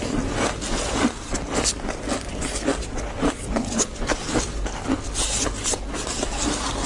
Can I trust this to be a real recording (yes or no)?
yes